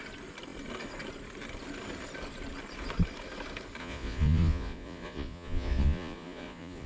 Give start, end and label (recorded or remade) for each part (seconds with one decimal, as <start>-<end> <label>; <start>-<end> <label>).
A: 0.0-3.8 recorded; 3.8-6.9 remade